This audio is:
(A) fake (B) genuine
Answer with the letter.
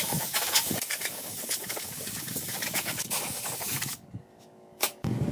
A